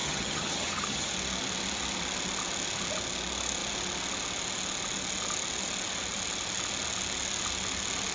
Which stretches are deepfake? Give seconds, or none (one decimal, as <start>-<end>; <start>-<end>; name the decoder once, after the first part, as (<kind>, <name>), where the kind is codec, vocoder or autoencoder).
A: 0.0-1.1 (vocoder, HiFi-GAN)